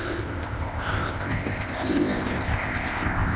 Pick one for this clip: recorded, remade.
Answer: remade